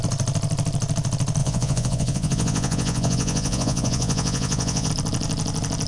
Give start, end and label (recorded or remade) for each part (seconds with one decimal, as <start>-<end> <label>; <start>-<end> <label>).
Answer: 0.0-1.4 recorded; 1.4-4.9 remade; 4.9-5.9 recorded